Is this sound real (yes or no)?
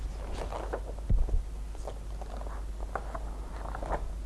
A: yes